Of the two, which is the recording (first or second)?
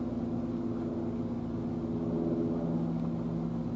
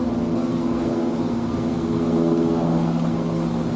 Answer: first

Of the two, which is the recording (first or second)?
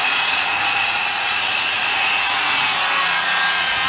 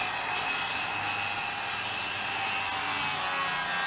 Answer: second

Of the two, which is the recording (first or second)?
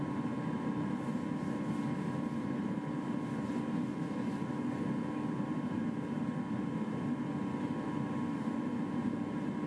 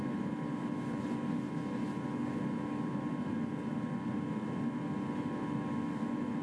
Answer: second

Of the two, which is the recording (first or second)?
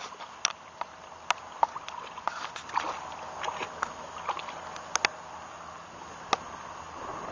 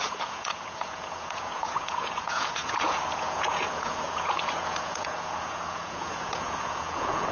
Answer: first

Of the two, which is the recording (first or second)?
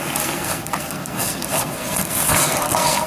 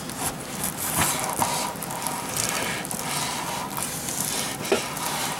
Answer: second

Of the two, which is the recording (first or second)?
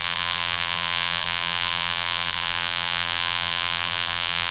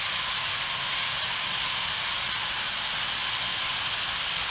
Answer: second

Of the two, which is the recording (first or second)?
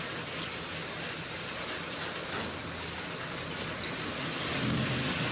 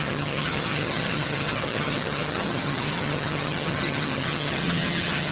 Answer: first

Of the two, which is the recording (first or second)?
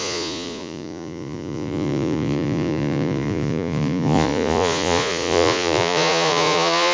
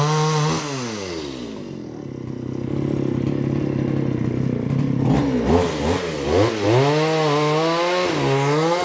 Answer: second